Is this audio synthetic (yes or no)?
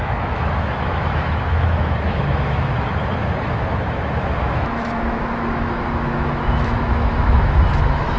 yes